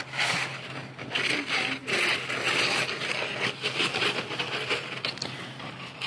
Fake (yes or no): no